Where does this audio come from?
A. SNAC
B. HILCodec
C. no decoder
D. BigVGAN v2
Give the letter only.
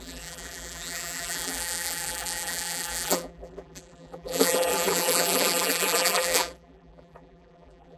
D